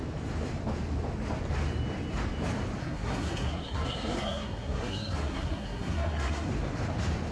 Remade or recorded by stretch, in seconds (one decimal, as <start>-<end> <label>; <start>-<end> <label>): 0.0-2.8 recorded; 2.8-6.5 remade; 6.5-7.3 recorded